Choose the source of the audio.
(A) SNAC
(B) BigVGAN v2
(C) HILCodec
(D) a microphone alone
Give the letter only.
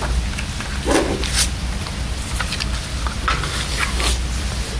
D